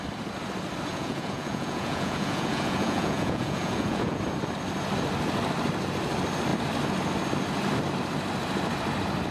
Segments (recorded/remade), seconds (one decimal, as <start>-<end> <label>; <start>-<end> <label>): 0.0-0.9 recorded; 0.9-4.2 remade; 4.2-9.3 recorded